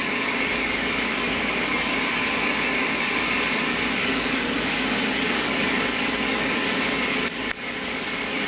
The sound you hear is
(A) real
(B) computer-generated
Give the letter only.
B